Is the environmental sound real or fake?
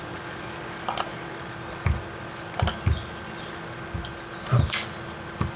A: real